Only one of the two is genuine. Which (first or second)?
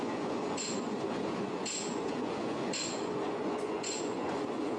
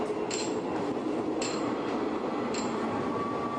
second